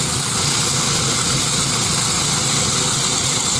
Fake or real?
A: real